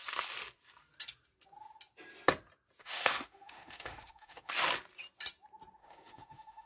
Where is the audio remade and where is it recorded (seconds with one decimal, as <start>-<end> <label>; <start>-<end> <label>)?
0.0-2.8 recorded; 2.8-4.5 remade; 4.5-5.8 recorded; 5.8-6.7 remade